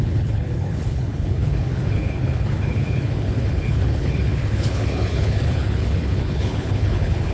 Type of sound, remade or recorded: remade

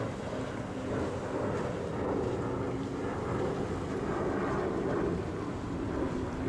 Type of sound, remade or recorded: recorded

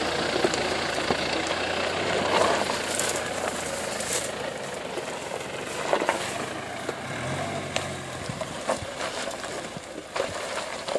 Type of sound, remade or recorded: recorded